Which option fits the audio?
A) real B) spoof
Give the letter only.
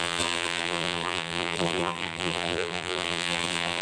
B